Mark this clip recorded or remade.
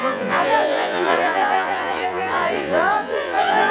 remade